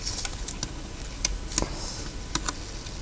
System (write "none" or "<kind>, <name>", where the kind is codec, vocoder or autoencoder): none